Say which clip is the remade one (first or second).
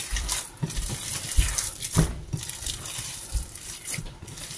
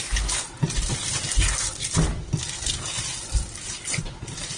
first